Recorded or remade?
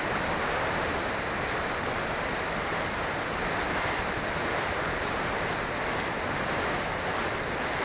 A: recorded